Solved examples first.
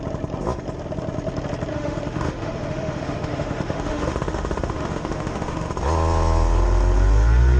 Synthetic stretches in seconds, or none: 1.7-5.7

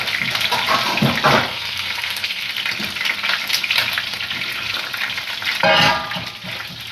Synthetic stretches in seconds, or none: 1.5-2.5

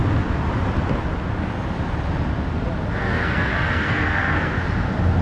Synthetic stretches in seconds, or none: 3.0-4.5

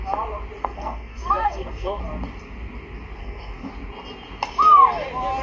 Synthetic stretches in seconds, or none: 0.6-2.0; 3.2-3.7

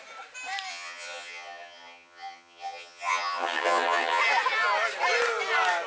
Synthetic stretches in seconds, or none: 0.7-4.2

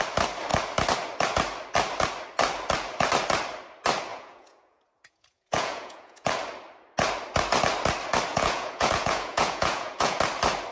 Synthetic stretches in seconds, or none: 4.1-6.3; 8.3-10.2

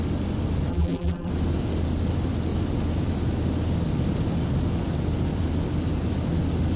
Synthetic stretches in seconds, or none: 0.7-1.3

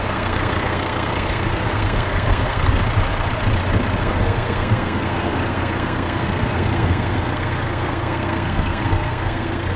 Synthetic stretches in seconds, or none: 0.0-2.8; 4.0-9.8